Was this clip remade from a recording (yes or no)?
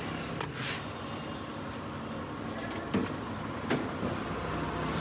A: no